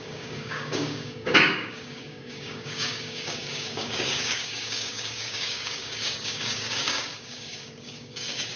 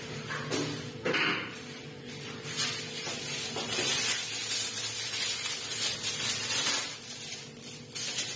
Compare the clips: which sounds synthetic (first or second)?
first